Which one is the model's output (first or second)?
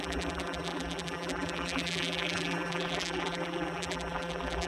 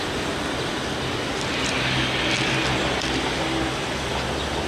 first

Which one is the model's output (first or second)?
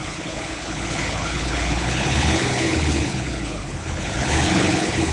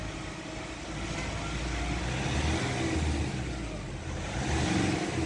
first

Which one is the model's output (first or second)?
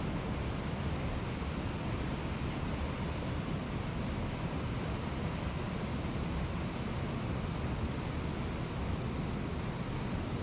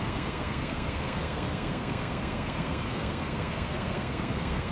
second